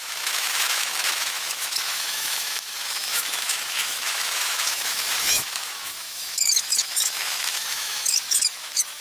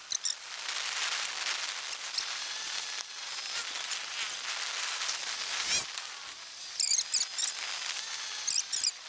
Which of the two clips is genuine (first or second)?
second